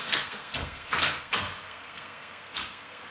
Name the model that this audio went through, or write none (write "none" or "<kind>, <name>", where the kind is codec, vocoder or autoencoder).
codec, SNAC